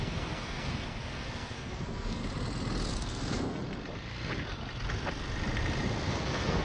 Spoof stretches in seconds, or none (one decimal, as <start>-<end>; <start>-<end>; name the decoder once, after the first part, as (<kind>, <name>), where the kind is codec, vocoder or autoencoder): 0.0-2.2 (codec, SNAC); 2.9-3.6; 6.1-6.6